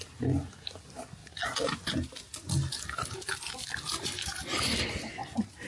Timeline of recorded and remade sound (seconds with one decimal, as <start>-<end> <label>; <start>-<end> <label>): 0.0-5.7 recorded